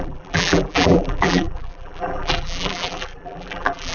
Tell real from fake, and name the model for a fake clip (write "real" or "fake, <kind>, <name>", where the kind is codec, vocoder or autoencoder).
fake, vocoder, BigVGAN v2